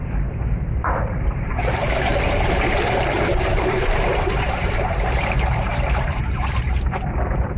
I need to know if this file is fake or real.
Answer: fake